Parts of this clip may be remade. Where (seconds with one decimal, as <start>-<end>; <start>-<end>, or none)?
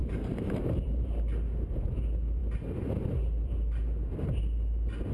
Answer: 0.0-1.1